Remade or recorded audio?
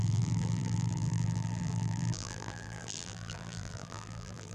remade